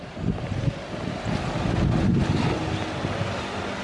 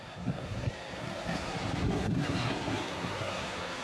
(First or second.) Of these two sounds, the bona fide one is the first